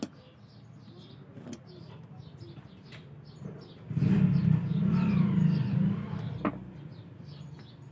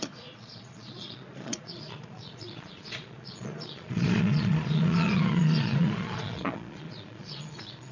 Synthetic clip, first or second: second